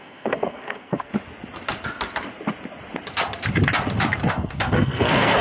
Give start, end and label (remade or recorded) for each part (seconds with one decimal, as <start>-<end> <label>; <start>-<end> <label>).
0.0-1.1 remade; 1.1-4.3 recorded; 4.3-5.4 remade